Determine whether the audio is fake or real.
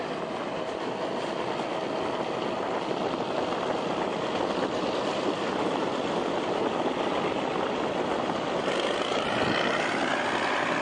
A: real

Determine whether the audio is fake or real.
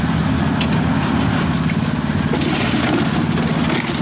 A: real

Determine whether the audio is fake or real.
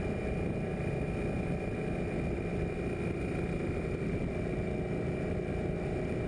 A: real